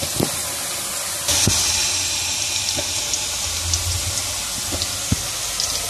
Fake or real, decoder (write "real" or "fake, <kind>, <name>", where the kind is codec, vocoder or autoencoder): real